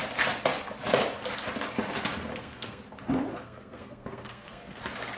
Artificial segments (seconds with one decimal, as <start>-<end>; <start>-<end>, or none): 2.3-2.8; 3.3-4.8